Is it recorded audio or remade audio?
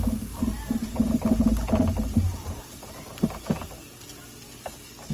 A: recorded